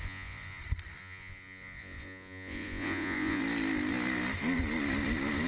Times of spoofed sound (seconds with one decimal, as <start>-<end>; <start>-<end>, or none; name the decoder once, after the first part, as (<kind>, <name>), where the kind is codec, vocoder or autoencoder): 0.0-0.6 (vocoder, Vocos); 1.0-3.4